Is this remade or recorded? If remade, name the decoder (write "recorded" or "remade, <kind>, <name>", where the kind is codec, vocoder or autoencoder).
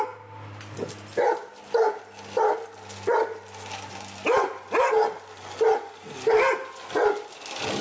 recorded